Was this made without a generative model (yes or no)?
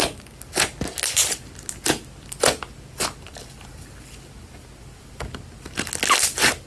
yes